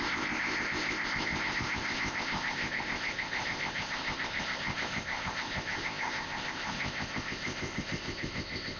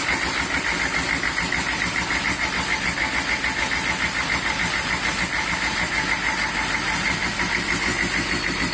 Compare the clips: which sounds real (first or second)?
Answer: second